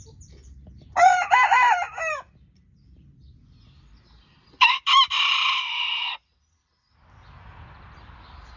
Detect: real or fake fake